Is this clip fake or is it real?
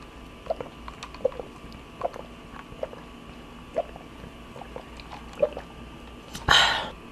real